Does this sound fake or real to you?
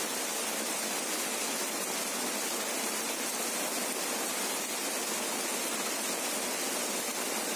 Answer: real